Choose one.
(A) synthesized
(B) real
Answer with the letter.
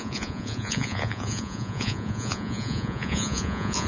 A